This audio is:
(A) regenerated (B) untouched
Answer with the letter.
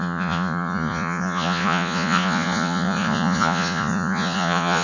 A